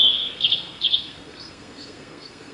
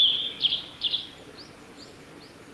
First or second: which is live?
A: second